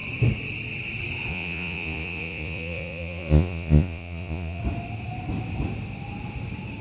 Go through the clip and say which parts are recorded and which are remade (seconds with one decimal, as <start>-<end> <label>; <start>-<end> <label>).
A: 0.0-1.3 recorded; 1.3-4.6 remade; 4.6-6.8 recorded